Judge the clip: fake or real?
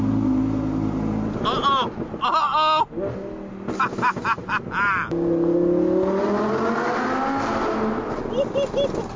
real